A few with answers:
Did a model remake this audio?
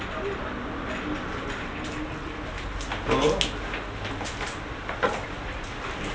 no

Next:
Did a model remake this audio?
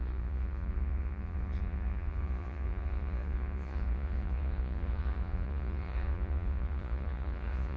yes